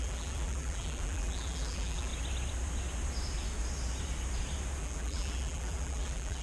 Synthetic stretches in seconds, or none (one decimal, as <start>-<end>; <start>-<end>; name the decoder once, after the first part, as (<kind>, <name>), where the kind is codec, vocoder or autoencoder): 0.0-2.1 (vocoder, BigVGAN v2); 4.8-6.4